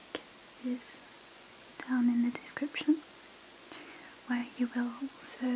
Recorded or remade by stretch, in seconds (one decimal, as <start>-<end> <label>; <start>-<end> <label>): 0.0-0.6 recorded; 0.6-1.7 remade; 1.7-2.5 recorded; 2.5-5.6 remade